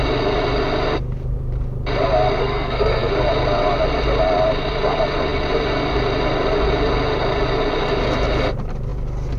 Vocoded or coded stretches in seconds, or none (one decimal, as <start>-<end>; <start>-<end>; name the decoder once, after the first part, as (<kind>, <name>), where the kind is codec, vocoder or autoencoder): 2.4-3.1 (codec, SNAC)